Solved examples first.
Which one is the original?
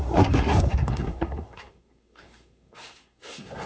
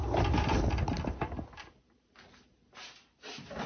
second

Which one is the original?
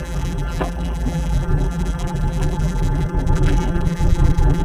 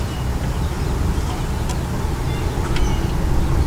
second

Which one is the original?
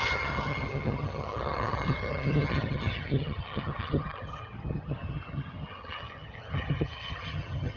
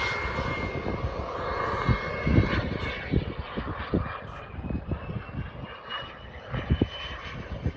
second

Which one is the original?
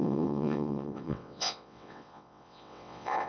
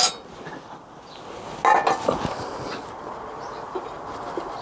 second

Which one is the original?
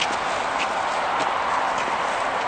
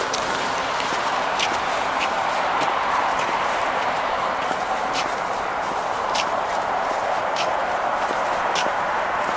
first